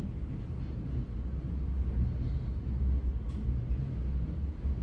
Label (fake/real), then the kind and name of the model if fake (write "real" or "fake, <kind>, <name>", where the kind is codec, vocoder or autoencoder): real